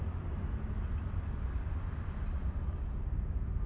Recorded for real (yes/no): yes